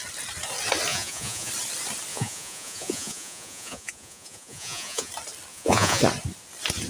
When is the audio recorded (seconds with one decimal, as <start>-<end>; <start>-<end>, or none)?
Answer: 0.0-0.9; 1.5-2.1; 5.1-5.5; 6.0-6.9